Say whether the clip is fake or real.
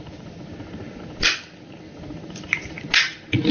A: real